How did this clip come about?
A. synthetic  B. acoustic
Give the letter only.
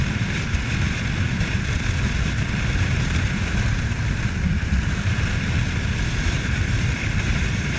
A